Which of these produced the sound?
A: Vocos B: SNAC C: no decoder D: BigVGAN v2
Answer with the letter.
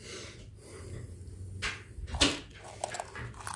C